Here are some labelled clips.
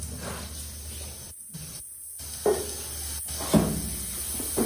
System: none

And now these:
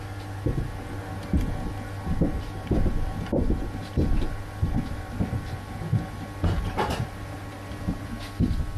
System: none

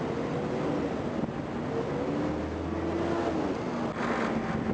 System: none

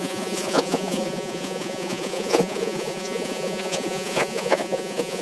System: vocoder, Vocos